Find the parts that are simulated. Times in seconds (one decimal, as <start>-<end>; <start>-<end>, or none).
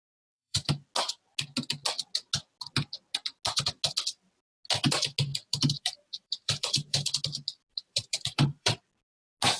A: 0.0-0.7; 5.5-7.1; 7.7-8.8